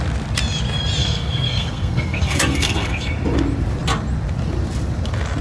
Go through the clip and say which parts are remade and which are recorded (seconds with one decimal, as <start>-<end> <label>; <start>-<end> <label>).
0.0-1.0 recorded; 1.0-3.1 remade; 3.1-5.4 recorded